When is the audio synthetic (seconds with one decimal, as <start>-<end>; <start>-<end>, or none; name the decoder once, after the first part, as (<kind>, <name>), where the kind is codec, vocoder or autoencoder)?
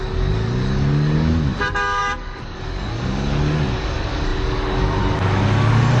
0.0-6.0 (codec, DAC)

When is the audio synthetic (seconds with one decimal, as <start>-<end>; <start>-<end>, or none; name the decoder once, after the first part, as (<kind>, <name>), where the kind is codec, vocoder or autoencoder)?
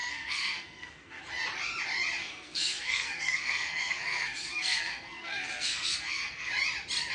0.0-1.2 (codec, SNAC); 2.2-6.5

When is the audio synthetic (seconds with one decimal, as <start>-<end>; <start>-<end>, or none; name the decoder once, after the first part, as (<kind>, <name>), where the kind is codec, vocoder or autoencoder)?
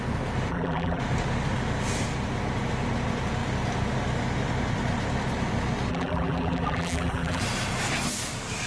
0.5-1.0 (vocoder, BigVGAN v2); 5.9-7.4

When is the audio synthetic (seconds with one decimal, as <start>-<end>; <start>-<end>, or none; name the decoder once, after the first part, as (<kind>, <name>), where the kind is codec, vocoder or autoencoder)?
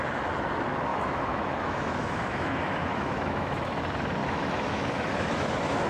0.9-3.8 (autoencoder, DAC-VAE); 4.2-5.9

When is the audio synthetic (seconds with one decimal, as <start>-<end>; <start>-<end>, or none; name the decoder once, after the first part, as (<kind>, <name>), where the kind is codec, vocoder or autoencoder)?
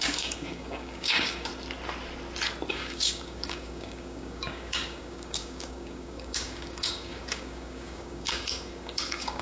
0.0-1.5 (codec, DAC); 2.7-9.4